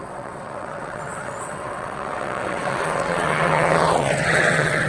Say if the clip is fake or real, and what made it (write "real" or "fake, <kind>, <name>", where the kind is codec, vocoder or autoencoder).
fake, vocoder, WaveNeXt